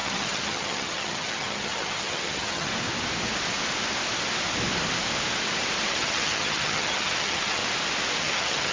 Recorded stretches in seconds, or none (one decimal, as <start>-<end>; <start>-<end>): 2.7-5.9; 7.6-8.2

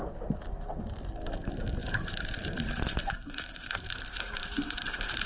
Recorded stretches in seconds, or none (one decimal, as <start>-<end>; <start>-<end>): 0.0-1.8

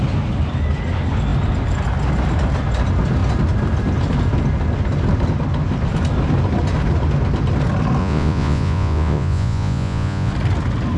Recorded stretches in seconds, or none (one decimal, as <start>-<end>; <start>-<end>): 0.0-8.0; 10.3-11.0

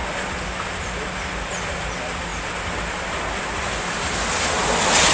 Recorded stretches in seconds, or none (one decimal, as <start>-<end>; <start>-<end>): 0.0-5.1

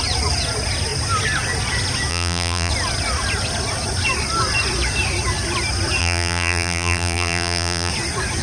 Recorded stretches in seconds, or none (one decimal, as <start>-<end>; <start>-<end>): 0.0-2.1; 2.7-6.0; 7.9-8.4